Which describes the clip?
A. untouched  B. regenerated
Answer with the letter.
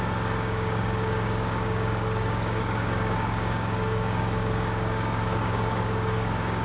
B